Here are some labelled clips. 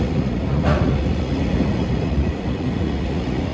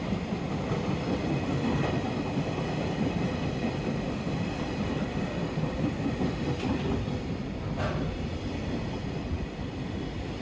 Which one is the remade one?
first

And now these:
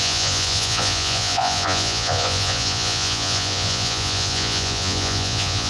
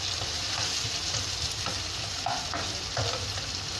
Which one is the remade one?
first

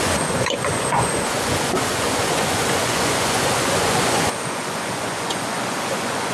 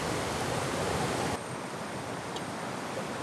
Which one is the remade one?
first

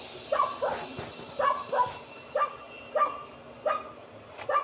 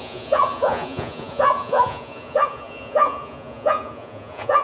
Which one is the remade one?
second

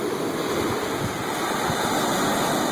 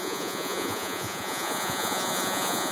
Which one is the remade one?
second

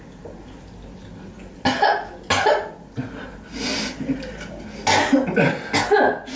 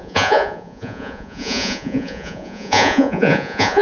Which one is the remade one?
second